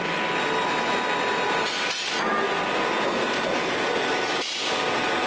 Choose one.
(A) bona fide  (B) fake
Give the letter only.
A